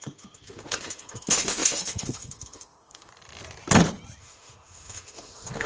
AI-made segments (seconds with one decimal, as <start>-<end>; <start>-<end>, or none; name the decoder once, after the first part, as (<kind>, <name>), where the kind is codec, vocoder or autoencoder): 0.0-3.1 (autoencoder, DAC-VAE); 4.2-5.7